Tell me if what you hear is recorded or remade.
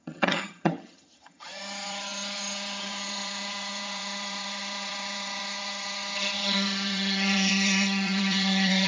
remade